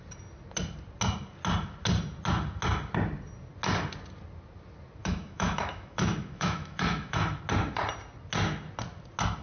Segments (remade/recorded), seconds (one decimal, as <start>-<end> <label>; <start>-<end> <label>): 0.0-5.0 recorded; 5.0-7.4 remade; 7.4-9.4 recorded